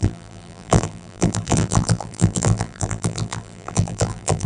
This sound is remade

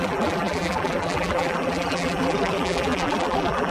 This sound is remade